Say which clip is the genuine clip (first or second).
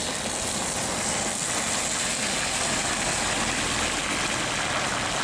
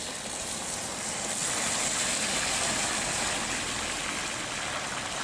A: first